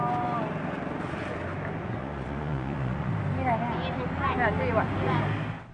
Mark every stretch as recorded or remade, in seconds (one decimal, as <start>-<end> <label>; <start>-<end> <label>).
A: 0.0-1.8 recorded; 1.8-3.1 remade; 3.1-5.7 recorded